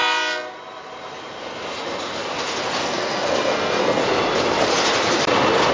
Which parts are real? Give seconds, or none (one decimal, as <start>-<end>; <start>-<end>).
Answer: 0.0-2.8; 4.0-5.7